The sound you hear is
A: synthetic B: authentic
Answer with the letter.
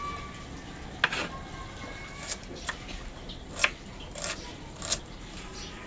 B